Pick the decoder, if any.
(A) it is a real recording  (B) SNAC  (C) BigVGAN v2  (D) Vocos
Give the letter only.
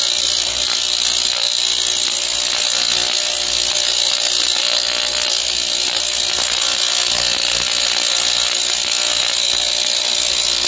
A